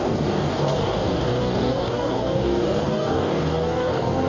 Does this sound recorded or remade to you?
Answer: remade